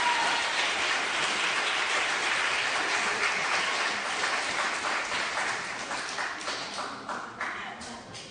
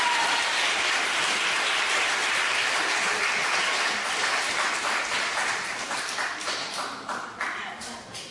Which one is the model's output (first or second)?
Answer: second